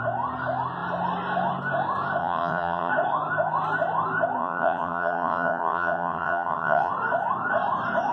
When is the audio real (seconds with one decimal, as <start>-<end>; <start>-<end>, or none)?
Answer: 0.0-2.2; 2.9-4.4; 6.9-8.1